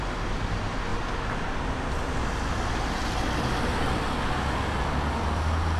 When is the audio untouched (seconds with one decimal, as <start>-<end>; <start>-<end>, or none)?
0.0-5.8